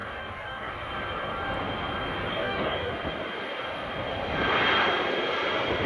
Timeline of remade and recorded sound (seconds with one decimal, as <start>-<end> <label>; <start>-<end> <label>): 0.0-0.7 remade; 0.7-2.3 recorded; 2.3-2.9 remade; 2.9-5.9 recorded